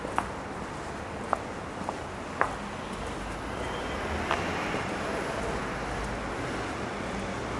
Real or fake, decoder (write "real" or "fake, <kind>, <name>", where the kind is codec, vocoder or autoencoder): real